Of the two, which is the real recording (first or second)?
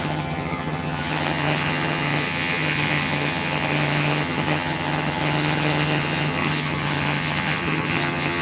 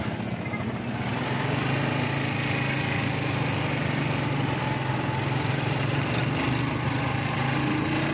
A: second